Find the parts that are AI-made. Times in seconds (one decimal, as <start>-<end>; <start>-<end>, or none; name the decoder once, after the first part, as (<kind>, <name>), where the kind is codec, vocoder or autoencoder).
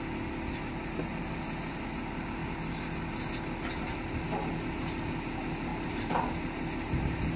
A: 1.1-1.9 (vocoder, BigVGAN v2); 5.7-6.3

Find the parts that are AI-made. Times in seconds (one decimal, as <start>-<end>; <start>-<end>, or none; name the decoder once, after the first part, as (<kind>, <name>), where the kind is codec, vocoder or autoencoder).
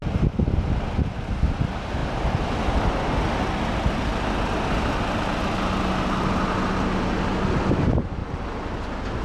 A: none